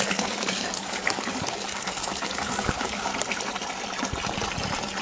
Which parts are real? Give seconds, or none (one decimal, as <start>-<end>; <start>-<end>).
3.1-5.0